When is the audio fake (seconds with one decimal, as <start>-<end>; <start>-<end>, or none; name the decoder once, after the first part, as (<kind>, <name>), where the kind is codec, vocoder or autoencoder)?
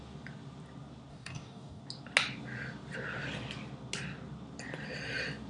1.1-1.8 (codec, DAC)